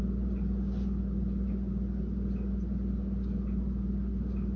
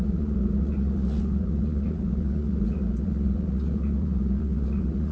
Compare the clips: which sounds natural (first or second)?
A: first